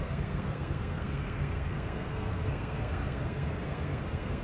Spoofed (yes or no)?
yes